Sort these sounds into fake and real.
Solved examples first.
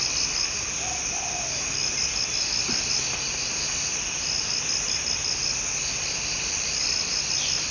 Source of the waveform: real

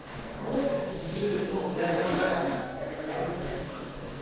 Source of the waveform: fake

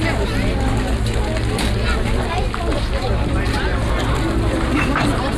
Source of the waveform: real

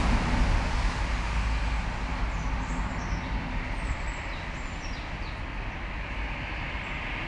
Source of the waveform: real